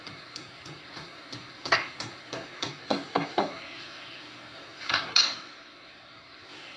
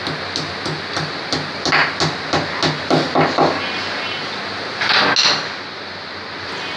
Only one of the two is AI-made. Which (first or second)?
first